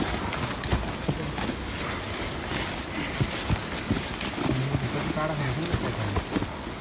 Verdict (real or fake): real